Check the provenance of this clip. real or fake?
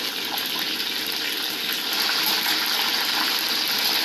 real